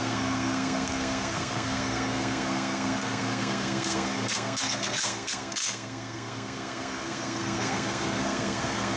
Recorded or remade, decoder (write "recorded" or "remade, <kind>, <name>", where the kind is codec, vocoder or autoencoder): remade, codec, SNAC